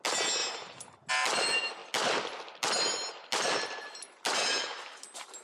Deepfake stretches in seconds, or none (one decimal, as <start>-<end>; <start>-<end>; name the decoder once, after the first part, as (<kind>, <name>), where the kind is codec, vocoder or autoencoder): 0.4-1.1 (vocoder, BigVGAN v2)